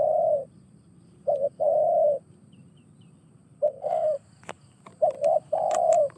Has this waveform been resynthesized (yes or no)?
yes